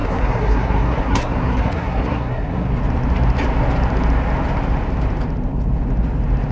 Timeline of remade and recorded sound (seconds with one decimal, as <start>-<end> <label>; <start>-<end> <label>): 0.0-2.7 remade; 2.7-6.5 recorded

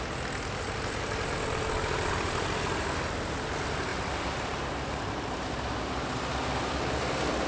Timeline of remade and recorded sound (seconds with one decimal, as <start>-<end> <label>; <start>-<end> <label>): 0.0-7.5 recorded

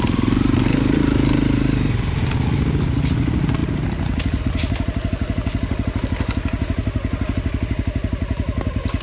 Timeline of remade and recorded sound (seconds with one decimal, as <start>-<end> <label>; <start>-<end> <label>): 0.0-9.0 recorded

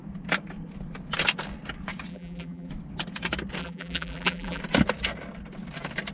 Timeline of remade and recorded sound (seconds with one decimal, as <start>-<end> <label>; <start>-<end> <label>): 0.0-2.1 recorded; 2.1-2.7 remade; 2.7-3.6 recorded; 3.6-4.6 remade; 4.6-6.1 recorded

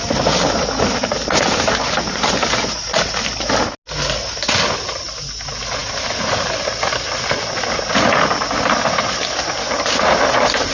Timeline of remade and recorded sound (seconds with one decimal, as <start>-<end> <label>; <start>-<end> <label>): 0.0-10.7 recorded